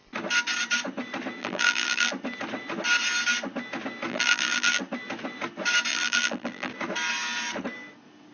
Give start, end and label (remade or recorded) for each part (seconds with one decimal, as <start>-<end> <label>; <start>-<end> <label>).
0.0-1.4 recorded; 1.4-2.1 remade; 2.1-4.1 recorded; 4.1-4.8 remade; 4.8-5.9 recorded; 5.9-6.7 remade; 6.7-8.3 recorded